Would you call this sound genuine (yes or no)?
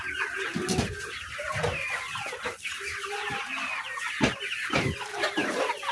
yes